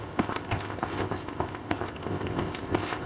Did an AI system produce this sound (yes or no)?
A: yes